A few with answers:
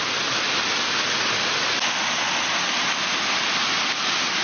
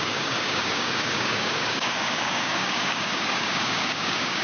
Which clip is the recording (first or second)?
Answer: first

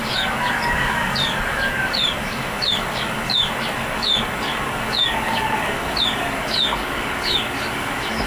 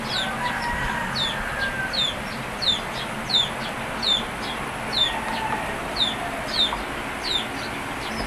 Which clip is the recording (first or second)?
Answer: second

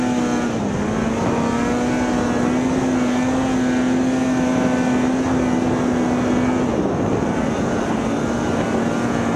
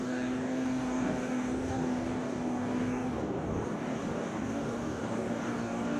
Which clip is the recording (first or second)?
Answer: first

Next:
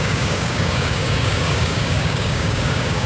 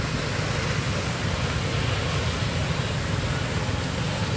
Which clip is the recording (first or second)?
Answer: second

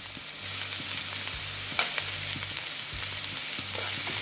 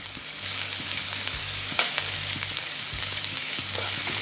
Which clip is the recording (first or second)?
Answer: first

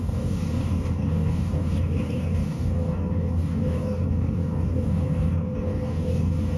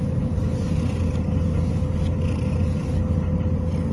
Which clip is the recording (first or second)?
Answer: second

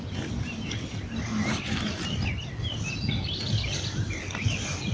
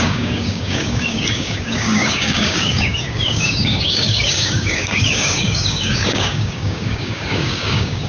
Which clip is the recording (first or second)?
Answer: first